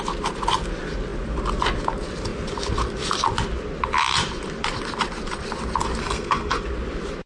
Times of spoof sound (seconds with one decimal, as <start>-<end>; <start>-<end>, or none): 6.0-6.6